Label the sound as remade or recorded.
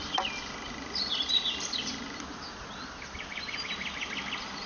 recorded